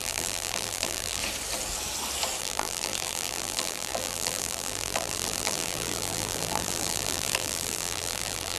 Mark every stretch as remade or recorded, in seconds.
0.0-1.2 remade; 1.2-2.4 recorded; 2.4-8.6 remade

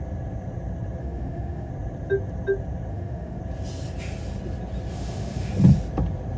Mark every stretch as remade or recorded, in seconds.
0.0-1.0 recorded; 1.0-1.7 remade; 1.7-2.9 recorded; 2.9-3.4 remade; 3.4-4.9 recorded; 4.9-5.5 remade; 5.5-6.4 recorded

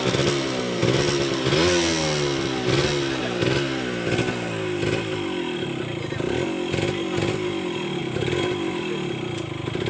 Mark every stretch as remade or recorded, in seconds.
0.0-9.9 recorded